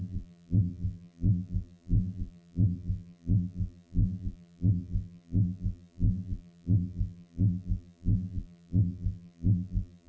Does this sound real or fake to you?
fake